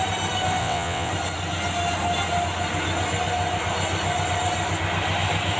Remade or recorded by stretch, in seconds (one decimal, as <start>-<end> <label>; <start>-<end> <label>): 0.0-0.6 recorded; 0.6-1.1 remade; 1.1-5.6 recorded